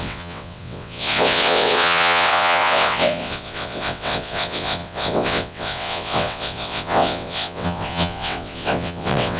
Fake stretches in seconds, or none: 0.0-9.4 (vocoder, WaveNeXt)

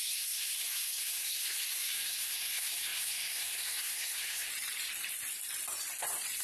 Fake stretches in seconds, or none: 0.0-4.5 (codec, SNAC)

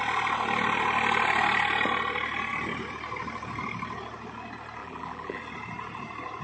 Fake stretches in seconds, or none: 4.8-5.4 (vocoder, BigVGAN v2)

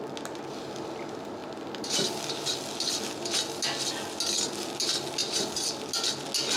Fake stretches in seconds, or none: 5.2-5.8 (vocoder, BigVGAN v2)

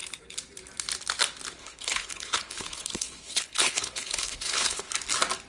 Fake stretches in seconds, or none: 1.6-4.9 (codec, HILCodec)